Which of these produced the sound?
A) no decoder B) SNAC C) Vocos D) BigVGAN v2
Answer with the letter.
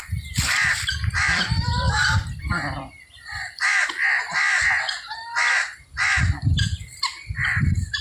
D